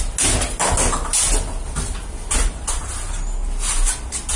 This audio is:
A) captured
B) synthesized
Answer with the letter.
A